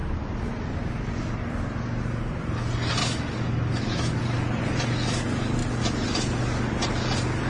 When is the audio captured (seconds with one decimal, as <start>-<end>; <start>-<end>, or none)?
0.0-3.0; 4.2-7.5